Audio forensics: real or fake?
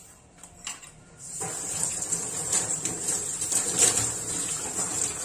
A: fake